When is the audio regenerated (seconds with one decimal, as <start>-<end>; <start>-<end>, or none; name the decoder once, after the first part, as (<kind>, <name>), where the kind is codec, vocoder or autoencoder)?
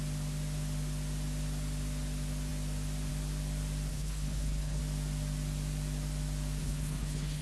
3.9-4.8 (codec, HILCodec); 6.6-7.4